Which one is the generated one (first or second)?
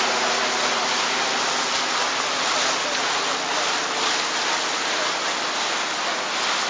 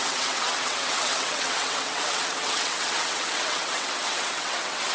second